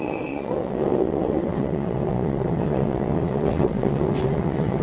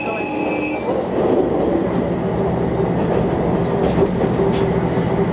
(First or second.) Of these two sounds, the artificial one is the first